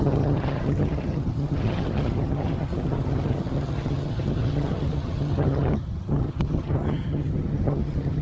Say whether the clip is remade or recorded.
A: remade